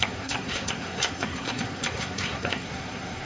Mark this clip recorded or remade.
remade